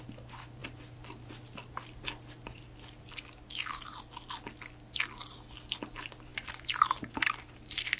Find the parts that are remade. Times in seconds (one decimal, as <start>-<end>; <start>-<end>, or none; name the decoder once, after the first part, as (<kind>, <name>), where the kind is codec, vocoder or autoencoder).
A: 6.3-8.0 (vocoder, BigVGAN v2)